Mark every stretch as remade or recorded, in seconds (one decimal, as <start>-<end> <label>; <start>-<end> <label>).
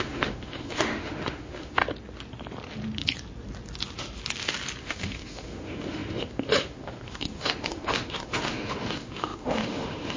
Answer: 0.0-1.8 remade; 1.8-4.8 recorded; 4.8-10.2 remade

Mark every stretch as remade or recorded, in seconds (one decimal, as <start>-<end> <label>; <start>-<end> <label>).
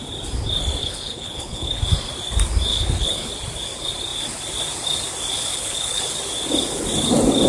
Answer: 0.0-0.8 recorded; 0.8-1.8 remade; 1.8-2.7 recorded; 2.7-3.3 remade; 3.3-5.5 recorded; 5.5-6.0 remade; 6.0-7.5 recorded